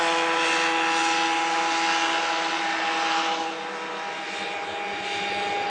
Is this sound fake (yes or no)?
no